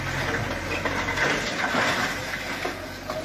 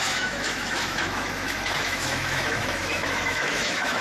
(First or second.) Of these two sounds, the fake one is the second